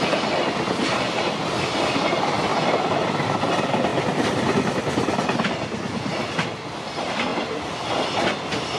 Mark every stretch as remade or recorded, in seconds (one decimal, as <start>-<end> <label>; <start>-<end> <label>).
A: 0.0-8.8 recorded